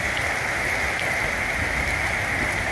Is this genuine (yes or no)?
yes